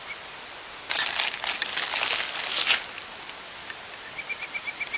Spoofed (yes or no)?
no